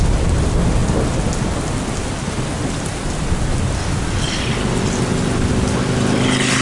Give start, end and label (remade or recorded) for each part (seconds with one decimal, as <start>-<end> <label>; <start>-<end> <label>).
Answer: 0.0-6.6 recorded